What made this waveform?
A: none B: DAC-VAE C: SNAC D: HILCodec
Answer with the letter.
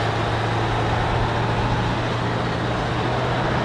A